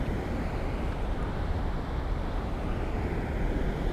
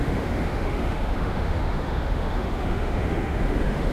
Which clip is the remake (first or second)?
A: second